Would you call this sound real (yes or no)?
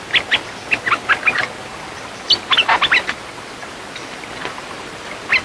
yes